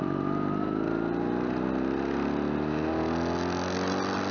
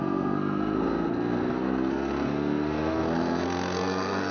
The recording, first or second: first